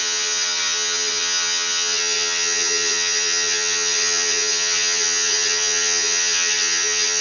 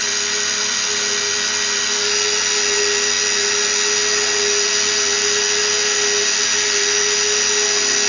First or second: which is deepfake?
first